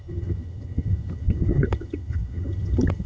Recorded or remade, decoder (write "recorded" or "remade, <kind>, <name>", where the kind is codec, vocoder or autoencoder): remade, vocoder, HiFi-GAN